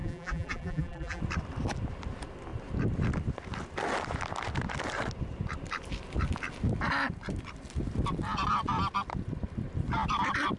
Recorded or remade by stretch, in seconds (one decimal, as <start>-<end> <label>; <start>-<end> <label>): 0.0-1.2 remade; 1.2-10.6 recorded